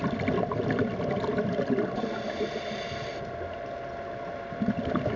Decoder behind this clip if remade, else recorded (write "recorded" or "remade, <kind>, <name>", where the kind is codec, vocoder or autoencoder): recorded